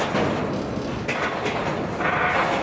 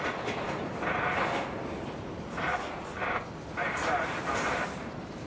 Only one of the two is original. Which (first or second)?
first